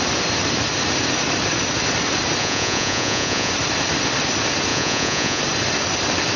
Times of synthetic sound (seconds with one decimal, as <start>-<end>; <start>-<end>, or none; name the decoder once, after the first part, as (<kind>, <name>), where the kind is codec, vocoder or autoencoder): 2.4-3.5 (vocoder, Vocos); 4.7-5.4